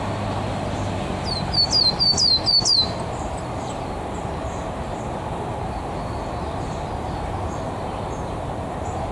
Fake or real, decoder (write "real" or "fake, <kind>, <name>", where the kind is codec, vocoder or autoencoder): real